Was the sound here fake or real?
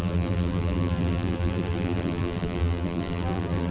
fake